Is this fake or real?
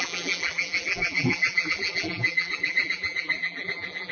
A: fake